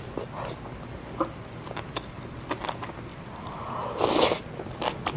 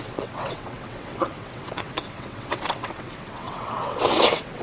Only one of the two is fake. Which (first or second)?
second